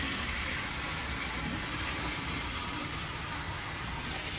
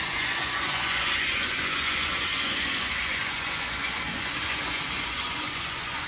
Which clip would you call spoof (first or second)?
second